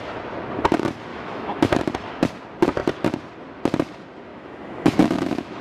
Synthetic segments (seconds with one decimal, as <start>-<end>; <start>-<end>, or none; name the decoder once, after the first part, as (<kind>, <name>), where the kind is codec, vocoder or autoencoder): 1.1-1.8 (autoencoder, DAC-VAE); 4.3-5.6